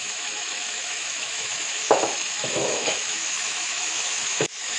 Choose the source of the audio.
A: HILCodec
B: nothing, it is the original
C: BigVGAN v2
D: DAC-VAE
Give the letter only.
D